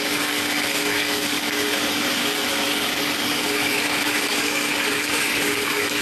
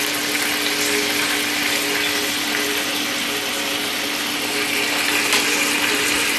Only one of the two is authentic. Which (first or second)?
second